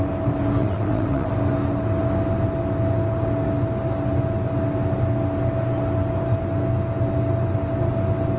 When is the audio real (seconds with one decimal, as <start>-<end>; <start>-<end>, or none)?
0.0-0.6; 1.3-8.4